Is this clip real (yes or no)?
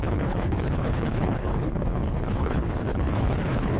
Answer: no